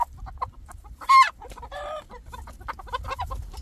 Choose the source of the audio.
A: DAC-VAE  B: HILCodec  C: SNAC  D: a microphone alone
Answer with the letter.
D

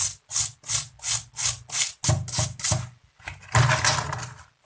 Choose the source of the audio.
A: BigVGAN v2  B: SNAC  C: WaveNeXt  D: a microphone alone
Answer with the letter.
D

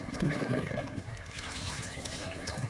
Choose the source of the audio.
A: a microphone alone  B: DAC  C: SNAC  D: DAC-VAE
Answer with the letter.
C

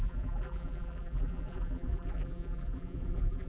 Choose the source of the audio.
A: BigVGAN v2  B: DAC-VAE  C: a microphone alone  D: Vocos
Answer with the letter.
A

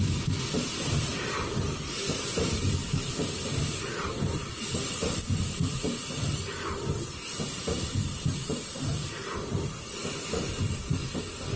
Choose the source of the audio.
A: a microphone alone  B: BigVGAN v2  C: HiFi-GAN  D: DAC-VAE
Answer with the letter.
A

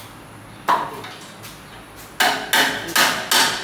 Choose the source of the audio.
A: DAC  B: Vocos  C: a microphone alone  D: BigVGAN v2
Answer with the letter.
C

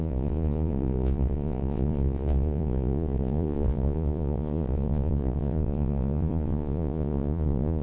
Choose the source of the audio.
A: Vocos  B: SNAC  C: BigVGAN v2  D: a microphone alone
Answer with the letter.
A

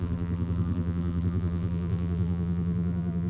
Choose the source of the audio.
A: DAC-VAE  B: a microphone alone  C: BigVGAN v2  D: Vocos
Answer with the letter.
C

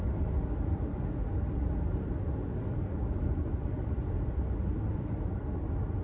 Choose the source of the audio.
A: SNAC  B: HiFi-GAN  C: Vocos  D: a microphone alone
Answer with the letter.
D